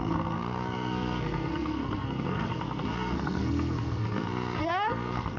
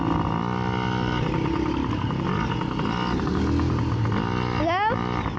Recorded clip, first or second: second